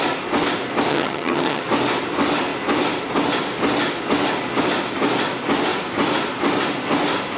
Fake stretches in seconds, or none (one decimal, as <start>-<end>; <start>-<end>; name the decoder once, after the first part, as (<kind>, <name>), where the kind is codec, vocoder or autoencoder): 0.9-1.6 (vocoder, HiFi-GAN)